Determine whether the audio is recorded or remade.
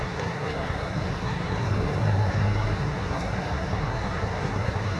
remade